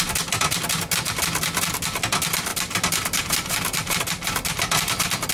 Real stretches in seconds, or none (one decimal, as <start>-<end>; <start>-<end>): 0.0-2.5; 4.0-5.3